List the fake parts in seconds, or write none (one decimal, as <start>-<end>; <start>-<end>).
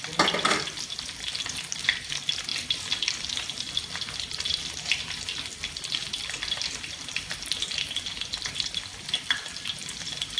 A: 2.5-4.6